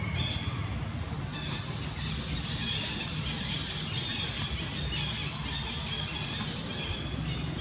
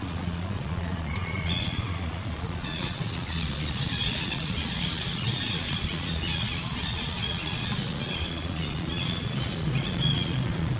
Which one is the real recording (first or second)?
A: first